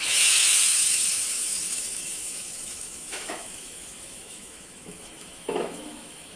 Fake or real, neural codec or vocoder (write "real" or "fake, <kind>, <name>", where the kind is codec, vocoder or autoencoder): fake, autoencoder, DAC-VAE